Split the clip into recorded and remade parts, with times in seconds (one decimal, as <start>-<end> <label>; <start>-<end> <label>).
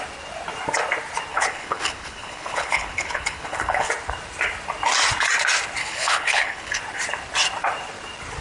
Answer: 0.0-1.3 recorded; 1.3-3.9 remade; 3.9-5.8 recorded; 5.8-6.8 remade; 6.8-8.4 recorded